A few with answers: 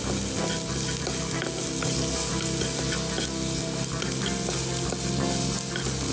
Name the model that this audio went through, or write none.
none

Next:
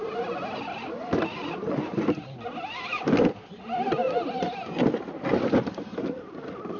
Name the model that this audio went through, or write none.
none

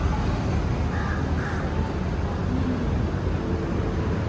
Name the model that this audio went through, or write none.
none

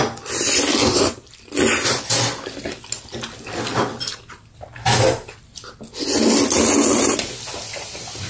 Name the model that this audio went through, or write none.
none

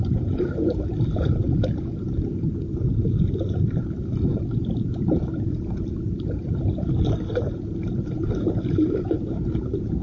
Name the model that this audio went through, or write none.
vocoder, BigVGAN v2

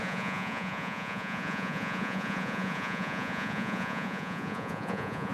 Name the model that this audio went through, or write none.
vocoder, Vocos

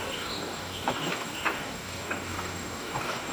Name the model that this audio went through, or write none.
codec, DAC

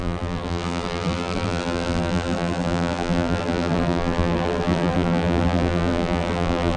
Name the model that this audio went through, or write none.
vocoder, BigVGAN v2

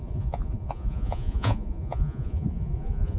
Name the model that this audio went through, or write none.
vocoder, Vocos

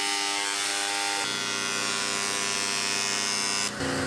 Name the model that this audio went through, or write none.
none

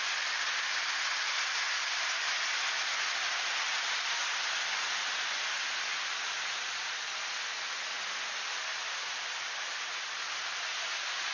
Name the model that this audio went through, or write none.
none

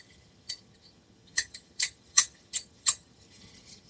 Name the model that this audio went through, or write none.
vocoder, HiFi-GAN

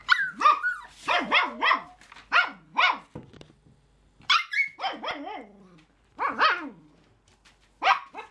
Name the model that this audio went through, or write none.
none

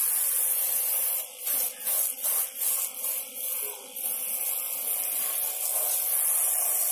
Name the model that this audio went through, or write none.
none